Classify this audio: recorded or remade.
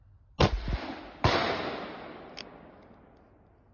recorded